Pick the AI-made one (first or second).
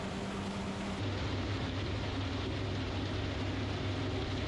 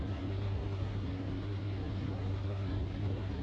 second